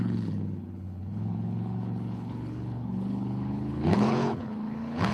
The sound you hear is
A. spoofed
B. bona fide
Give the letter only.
A